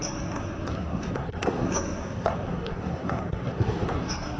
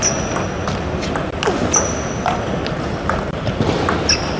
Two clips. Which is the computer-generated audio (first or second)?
first